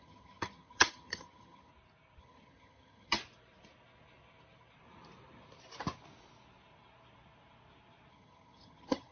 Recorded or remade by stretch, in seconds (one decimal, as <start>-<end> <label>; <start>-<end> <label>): 0.0-1.7 remade; 1.7-2.2 recorded; 2.2-3.2 remade; 3.2-8.1 recorded; 8.1-9.1 remade